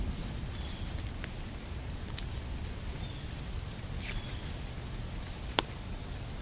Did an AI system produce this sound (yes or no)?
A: no